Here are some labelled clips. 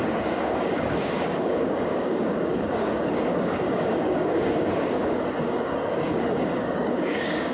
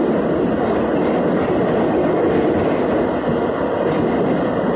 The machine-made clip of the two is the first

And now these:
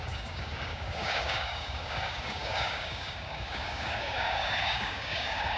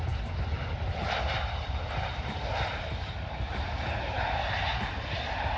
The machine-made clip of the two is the first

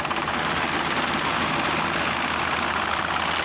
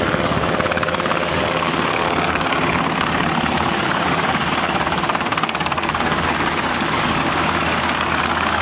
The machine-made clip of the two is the second